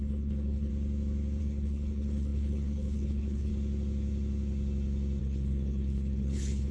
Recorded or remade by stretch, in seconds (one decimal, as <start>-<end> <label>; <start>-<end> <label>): 0.0-0.7 remade; 0.7-1.4 recorded; 1.4-3.5 remade; 3.5-5.2 recorded; 5.2-6.7 remade